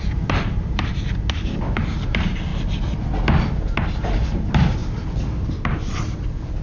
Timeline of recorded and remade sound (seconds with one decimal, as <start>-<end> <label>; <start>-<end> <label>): 0.0-2.5 remade; 2.5-4.2 recorded; 4.2-4.8 remade; 4.8-6.6 recorded